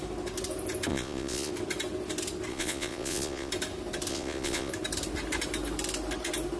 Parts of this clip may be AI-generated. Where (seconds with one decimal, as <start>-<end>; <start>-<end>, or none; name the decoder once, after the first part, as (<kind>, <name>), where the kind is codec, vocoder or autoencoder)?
0.9-1.5 (vocoder, Vocos); 2.5-3.5; 4.1-4.7